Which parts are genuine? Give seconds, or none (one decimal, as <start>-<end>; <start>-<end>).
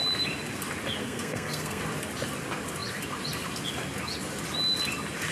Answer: 0.0-1.0; 1.8-5.3